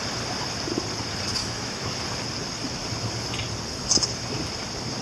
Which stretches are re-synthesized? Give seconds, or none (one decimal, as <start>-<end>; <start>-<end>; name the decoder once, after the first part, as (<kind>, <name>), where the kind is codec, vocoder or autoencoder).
1.4-1.9 (autoencoder, DAC-VAE)